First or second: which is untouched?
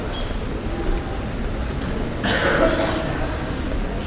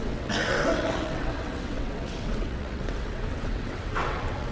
first